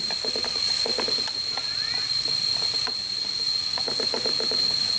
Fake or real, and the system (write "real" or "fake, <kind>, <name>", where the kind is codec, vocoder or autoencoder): real